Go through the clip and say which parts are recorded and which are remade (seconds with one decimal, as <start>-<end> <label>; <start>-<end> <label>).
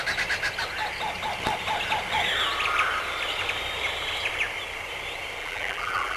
0.0-5.4 recorded; 5.4-6.2 remade